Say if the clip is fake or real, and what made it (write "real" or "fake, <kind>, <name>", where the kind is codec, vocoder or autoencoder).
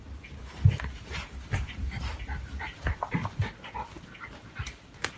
fake, vocoder, BigVGAN v2